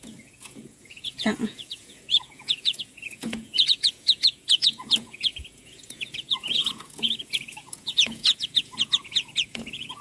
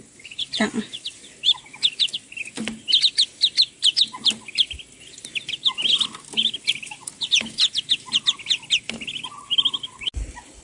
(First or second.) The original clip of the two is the second